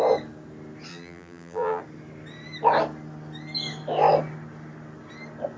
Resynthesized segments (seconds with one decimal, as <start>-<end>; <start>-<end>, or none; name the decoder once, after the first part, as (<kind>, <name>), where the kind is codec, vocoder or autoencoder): 0.9-1.8 (vocoder, BigVGAN v2)